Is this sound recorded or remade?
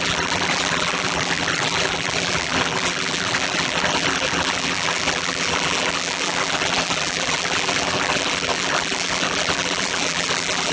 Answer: remade